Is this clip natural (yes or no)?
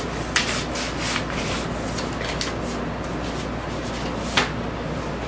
yes